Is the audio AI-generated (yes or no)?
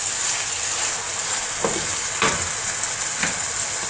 no